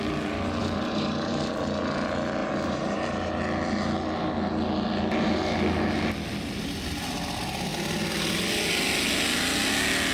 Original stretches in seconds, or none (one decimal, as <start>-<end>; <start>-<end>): 0.0-0.6; 1.3-2.4; 3.3-10.1